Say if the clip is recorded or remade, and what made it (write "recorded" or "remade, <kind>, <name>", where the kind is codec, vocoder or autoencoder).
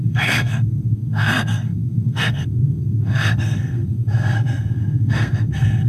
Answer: remade, codec, SNAC